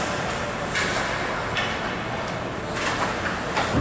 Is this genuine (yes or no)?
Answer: yes